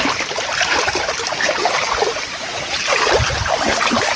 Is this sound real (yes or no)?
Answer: no